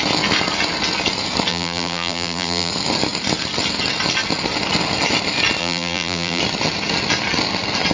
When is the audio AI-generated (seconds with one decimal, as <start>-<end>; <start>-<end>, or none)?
1.5-2.7; 5.6-6.4